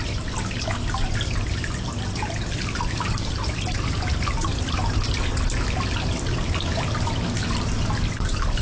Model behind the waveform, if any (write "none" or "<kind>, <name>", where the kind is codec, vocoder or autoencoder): none